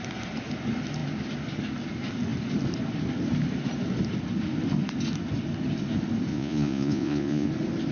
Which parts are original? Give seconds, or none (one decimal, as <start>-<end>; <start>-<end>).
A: 0.0-6.3; 7.5-7.9